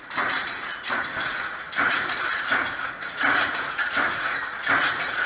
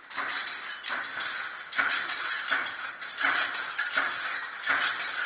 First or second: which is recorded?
second